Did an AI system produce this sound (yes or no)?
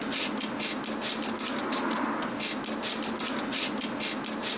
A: no